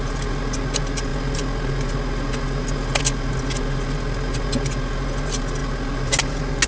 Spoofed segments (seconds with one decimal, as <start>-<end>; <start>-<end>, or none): none